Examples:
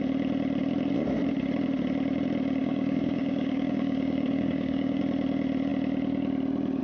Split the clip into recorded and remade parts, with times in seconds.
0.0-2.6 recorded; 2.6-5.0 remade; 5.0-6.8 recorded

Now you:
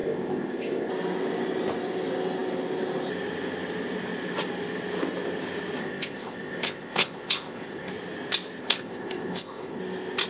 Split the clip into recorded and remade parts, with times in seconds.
0.0-0.9 remade; 0.9-5.8 recorded; 5.8-7.9 remade; 7.9-8.6 recorded; 8.6-9.8 remade; 9.8-10.3 recorded

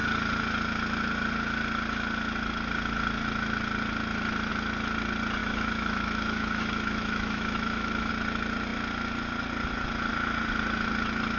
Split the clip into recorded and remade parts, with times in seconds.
0.0-5.4 recorded; 5.4-8.1 remade; 8.1-11.4 recorded

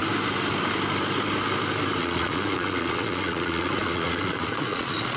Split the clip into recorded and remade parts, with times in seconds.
0.0-2.0 recorded; 2.0-5.2 remade

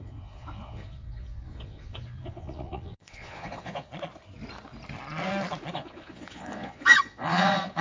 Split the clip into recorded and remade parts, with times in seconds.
0.0-3.9 remade; 3.9-5.7 recorded; 5.7-7.8 remade